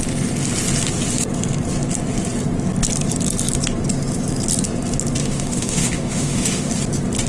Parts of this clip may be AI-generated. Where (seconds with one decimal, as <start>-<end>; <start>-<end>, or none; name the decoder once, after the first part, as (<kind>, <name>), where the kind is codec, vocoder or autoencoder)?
5.2-6.7 (autoencoder, DAC-VAE)